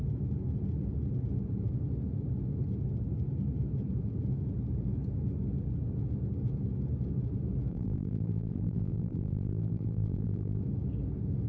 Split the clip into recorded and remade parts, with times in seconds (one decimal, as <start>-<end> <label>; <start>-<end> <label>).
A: 0.0-7.7 recorded; 7.7-10.6 remade; 10.6-11.5 recorded